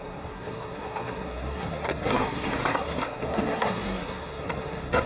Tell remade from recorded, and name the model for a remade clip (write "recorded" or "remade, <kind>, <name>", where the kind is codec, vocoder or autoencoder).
remade, codec, SNAC